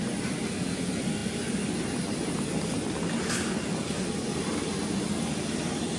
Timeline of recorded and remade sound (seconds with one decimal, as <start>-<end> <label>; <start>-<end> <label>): 0.0-6.0 recorded